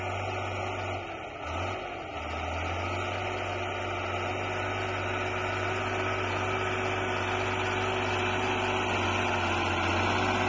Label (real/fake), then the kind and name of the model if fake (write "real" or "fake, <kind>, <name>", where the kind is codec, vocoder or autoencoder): real